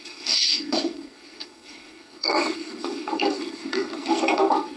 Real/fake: fake